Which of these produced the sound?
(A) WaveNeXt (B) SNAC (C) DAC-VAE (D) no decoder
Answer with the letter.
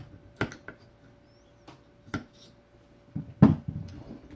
D